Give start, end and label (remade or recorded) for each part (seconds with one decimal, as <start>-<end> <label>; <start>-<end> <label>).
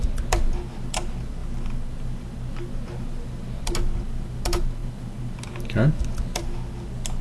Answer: 0.0-7.2 recorded